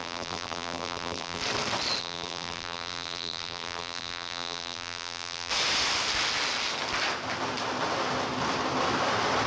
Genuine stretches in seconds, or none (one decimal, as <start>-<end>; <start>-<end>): 1.4-2.0; 5.5-9.5